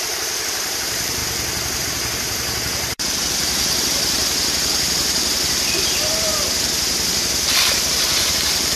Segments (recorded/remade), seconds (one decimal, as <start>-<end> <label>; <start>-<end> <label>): 0.0-1.2 remade; 1.2-1.8 recorded; 1.8-8.8 remade